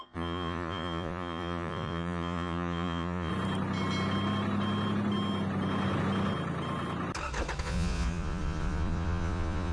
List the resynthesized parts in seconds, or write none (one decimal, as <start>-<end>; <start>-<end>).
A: 0.0-3.3; 7.6-9.7